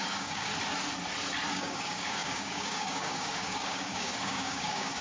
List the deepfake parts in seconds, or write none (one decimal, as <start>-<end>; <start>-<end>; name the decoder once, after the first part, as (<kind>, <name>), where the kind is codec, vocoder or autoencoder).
0.0-0.5 (codec, DAC); 1.5-5.0

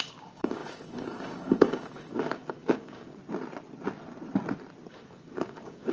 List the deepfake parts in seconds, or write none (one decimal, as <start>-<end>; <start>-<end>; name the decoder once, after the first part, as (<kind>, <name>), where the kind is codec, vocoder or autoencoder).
0.0-3.2 (codec, DAC); 4.9-5.9

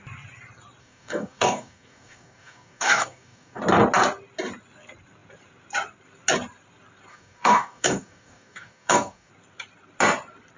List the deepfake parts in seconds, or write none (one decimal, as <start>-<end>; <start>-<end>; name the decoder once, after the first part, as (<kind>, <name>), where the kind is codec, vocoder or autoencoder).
0.8-3.6 (codec, DAC); 7.1-9.3

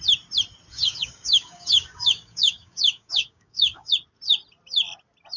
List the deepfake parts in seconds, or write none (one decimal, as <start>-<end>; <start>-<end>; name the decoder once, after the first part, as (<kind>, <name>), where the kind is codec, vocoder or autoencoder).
0.7-3.9 (codec, DAC)